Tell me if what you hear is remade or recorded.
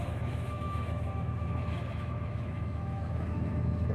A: remade